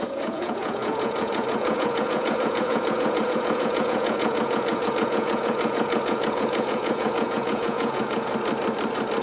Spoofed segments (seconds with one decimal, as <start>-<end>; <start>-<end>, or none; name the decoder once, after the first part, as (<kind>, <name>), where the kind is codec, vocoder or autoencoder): 0.0-8.3 (vocoder, Vocos)